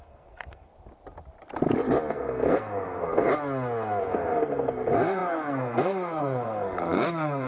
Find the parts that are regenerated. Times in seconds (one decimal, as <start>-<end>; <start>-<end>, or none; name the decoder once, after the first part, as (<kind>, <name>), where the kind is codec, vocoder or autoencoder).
0.0-0.7 (codec, SNAC); 2.1-3.3; 4.0-7.5